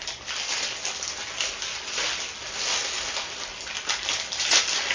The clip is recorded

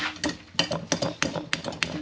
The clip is recorded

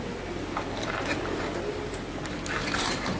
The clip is recorded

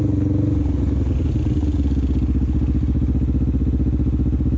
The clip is recorded